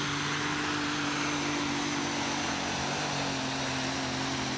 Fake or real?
real